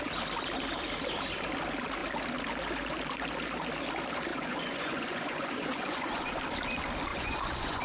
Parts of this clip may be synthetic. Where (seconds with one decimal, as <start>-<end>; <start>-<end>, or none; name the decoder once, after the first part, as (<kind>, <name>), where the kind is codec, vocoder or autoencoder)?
4.3-6.3 (vocoder, Vocos); 7.1-7.8